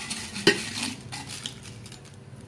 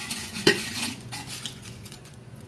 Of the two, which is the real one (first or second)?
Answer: first